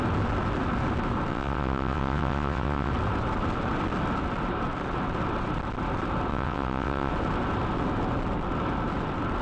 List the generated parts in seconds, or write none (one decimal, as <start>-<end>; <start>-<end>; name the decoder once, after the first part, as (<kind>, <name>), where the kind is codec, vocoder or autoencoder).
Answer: 1.3-2.9 (vocoder, WaveNeXt); 6.3-7.1